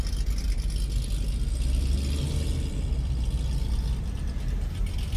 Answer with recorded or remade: recorded